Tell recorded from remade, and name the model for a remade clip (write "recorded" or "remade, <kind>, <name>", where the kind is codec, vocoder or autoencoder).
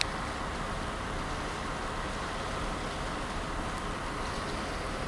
recorded